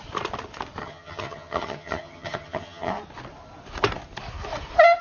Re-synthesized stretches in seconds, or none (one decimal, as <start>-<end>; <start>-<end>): 0.8-2.9